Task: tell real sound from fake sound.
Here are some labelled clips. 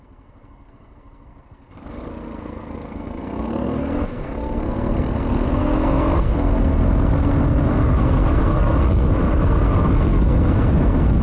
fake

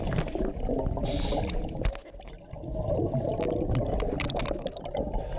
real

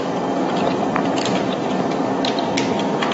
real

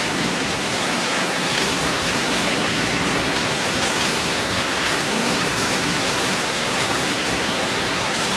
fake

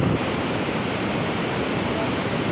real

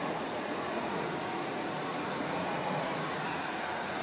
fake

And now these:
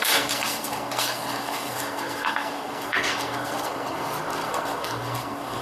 fake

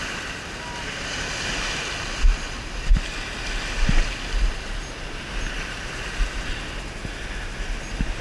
real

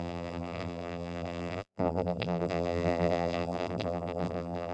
fake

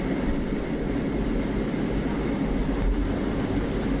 real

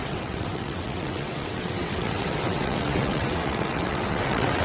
fake